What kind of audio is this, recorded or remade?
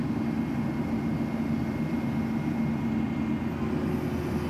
recorded